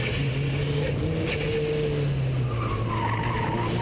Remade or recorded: recorded